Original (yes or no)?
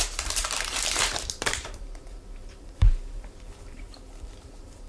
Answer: no